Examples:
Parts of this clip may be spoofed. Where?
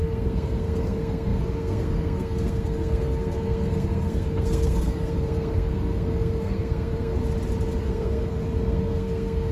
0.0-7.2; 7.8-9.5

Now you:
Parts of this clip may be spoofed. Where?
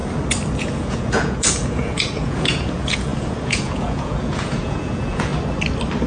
0.6-5.3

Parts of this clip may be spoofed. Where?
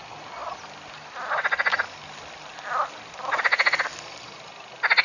none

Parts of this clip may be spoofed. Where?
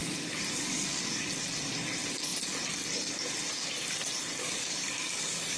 0.0-1.2; 4.4-5.6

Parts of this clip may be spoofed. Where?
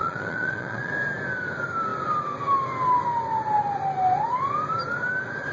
0.0-0.9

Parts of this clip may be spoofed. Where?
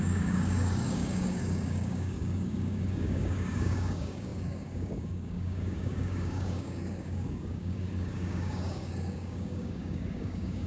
0.0-10.7